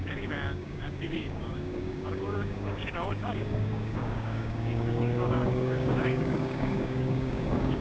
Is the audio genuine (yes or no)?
no